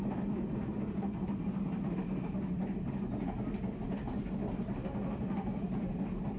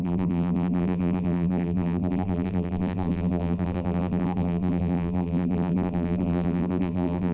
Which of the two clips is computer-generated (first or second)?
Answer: second